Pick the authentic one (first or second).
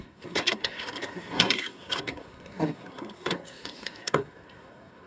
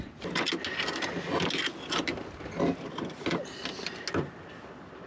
second